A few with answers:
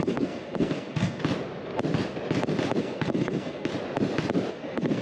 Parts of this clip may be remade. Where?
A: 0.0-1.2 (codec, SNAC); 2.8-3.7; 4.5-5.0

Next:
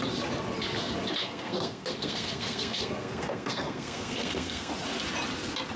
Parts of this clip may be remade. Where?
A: 1.2-4.7 (codec, SNAC)

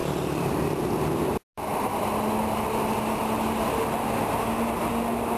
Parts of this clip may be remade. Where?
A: 0.0-0.8 (vocoder, BigVGAN v2); 1.7-4.9